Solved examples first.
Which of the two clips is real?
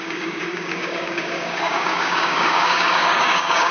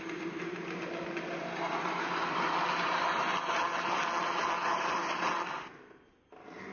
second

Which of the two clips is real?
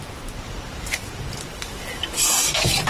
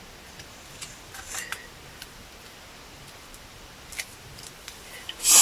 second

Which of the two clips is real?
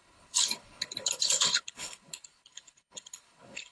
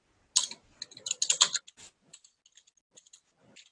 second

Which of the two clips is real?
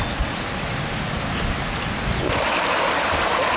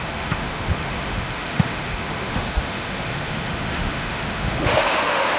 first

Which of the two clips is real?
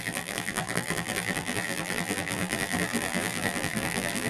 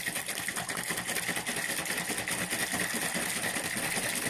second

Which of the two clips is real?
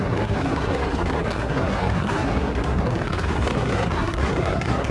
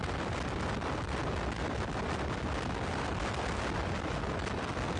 second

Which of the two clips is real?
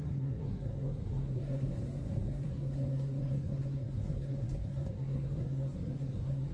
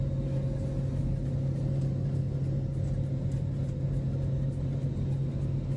second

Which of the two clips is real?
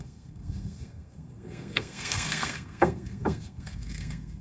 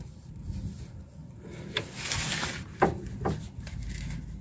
second